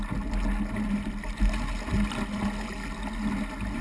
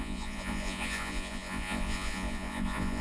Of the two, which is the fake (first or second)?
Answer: second